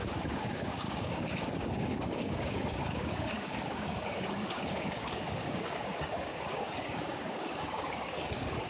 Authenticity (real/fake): fake